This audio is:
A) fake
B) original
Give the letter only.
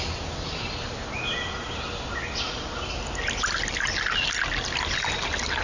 B